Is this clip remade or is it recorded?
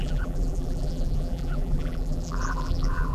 remade